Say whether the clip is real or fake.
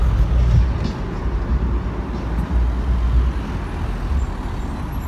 real